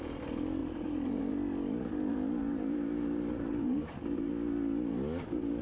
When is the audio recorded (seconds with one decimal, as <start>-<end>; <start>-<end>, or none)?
0.0-0.6; 1.2-2.5; 4.3-5.6